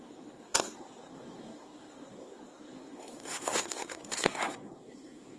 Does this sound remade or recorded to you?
remade